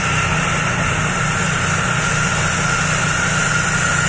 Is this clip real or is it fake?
real